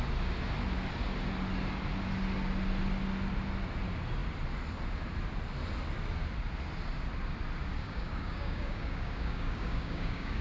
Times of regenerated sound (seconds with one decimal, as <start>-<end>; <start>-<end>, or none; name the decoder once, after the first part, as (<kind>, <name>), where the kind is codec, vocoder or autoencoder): 7.8-10.4 (codec, DAC)